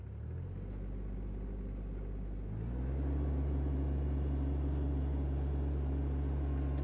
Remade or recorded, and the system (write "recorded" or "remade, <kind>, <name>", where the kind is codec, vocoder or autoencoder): recorded